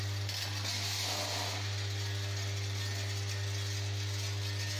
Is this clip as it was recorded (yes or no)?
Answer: yes